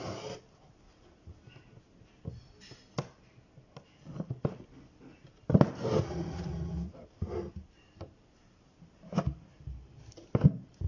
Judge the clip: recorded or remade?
recorded